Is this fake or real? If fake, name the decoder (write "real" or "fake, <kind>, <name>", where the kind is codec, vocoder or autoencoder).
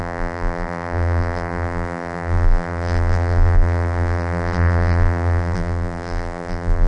fake, vocoder, BigVGAN v2